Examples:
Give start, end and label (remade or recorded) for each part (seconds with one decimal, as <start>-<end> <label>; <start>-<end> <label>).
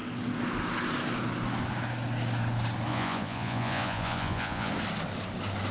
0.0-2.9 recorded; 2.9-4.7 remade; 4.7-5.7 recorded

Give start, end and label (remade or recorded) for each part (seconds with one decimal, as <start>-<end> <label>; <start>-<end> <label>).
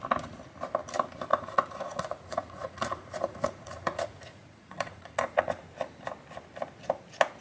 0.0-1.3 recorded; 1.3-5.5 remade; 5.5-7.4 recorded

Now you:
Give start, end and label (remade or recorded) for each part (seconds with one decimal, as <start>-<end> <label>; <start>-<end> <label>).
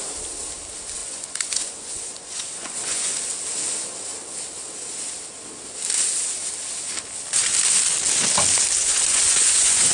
0.0-1.0 recorded; 1.0-3.2 remade; 3.2-8.8 recorded; 8.8-9.9 remade